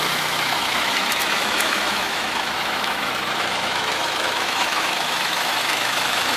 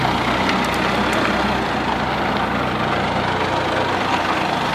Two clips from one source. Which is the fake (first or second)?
first